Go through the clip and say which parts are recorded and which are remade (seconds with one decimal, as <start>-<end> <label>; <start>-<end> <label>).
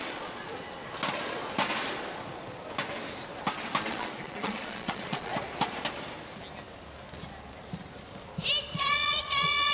0.0-0.5 remade; 0.5-3.9 recorded; 3.9-5.3 remade; 5.3-8.9 recorded; 8.9-9.7 remade